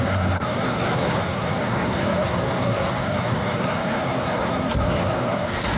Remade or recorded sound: remade